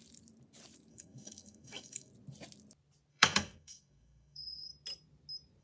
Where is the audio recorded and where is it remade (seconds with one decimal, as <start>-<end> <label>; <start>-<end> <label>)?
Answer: 0.0-0.9 recorded; 0.9-2.1 remade; 2.1-3.1 recorded; 3.1-4.7 remade; 4.7-5.6 recorded